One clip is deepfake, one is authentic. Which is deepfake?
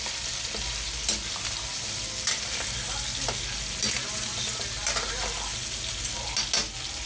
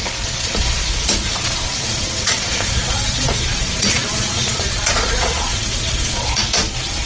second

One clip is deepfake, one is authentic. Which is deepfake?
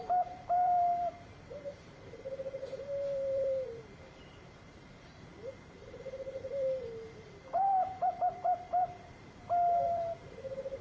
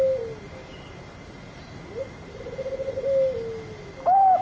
first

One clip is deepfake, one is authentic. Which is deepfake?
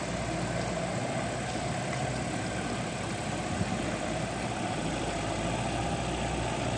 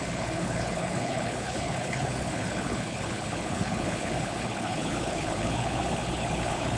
second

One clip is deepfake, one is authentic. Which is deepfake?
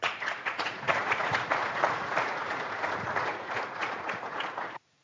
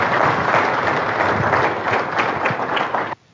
first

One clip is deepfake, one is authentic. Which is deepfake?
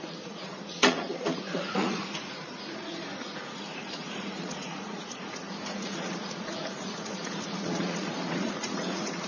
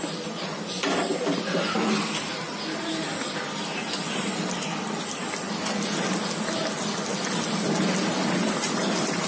first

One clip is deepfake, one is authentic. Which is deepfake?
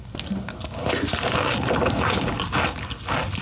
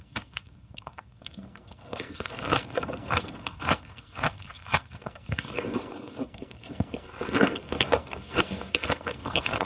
second